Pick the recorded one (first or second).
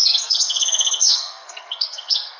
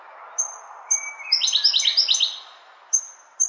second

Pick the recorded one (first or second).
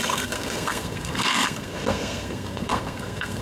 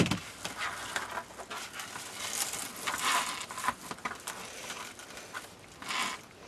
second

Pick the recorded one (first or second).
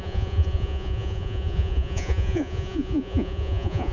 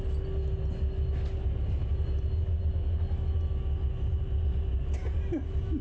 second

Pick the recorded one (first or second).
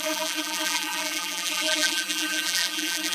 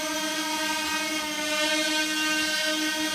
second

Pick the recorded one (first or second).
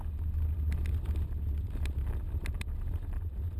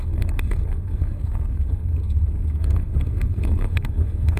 first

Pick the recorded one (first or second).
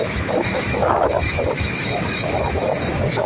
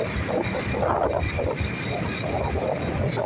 second